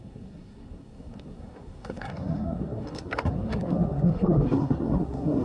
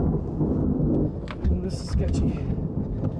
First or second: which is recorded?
second